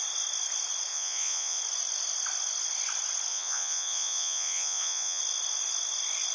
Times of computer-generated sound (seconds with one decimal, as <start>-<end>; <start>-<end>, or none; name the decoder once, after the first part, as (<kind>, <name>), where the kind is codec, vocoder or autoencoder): 0.9-1.6 (vocoder, Vocos); 3.3-5.2